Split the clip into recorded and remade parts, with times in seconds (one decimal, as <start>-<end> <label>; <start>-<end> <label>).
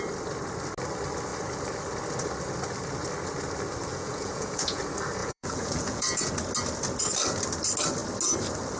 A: 0.0-3.9 recorded; 3.9-4.8 remade; 4.8-5.2 recorded; 5.2-6.3 remade; 6.3-8.8 recorded